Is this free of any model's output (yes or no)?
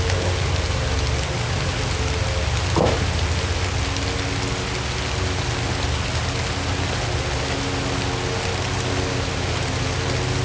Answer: yes